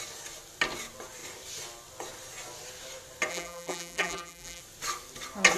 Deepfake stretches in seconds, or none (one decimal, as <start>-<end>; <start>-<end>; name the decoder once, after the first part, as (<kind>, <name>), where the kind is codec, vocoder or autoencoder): 3.3-4.6 (vocoder, BigVGAN v2)